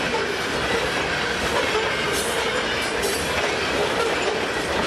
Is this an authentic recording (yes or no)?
yes